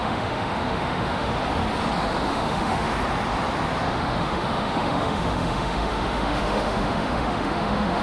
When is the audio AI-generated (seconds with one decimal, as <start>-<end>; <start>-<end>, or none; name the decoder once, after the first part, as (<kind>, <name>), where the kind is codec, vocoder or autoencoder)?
0.0-1.3 (autoencoder, DAC-VAE); 2.3-2.9; 3.9-8.0